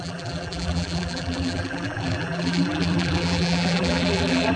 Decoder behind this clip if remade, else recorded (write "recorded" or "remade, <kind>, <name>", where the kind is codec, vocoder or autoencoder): remade, vocoder, BigVGAN v2